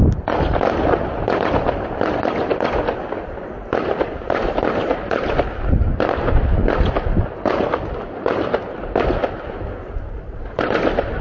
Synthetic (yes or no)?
no